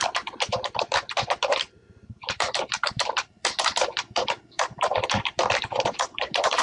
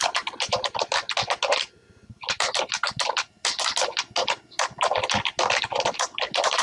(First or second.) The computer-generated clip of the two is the first